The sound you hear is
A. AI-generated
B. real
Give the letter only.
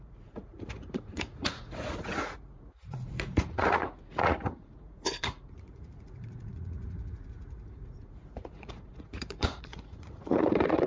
A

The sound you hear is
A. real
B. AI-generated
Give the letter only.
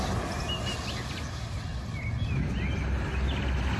A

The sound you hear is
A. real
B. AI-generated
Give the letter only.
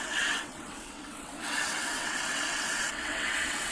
B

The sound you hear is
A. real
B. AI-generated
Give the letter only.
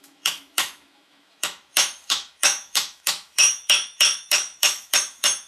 B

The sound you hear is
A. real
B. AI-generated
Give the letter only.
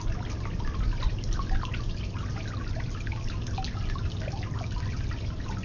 A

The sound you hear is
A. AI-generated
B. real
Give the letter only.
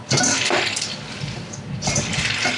B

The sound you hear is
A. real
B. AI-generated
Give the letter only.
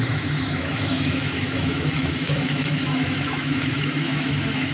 B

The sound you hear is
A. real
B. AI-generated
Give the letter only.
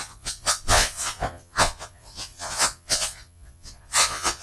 B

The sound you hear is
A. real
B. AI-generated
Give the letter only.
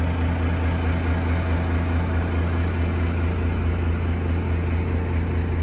A